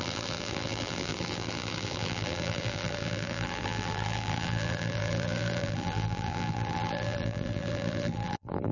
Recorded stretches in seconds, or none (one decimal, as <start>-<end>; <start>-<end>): none